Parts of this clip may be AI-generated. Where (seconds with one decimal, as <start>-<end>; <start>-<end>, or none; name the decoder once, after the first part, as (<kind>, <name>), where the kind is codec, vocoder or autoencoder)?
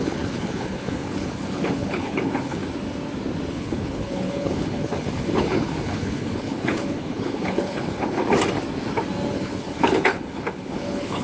0.0-2.6 (codec, HILCodec); 3.5-8.2; 9.3-11.2